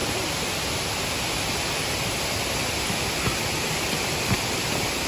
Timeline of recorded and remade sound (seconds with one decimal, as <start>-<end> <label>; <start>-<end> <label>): 0.0-5.1 recorded